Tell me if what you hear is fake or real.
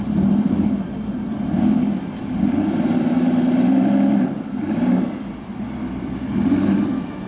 fake